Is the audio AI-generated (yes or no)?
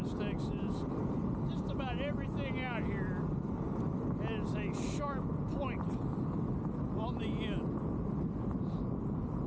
no